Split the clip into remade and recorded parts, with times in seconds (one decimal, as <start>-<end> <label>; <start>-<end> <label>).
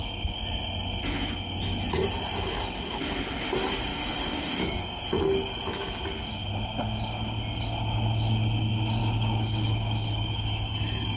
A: 0.0-3.9 recorded; 3.9-5.0 remade; 5.0-9.0 recorded; 9.0-11.2 remade